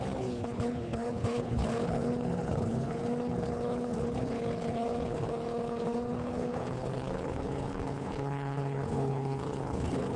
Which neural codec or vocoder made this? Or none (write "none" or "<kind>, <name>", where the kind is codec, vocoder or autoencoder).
codec, HILCodec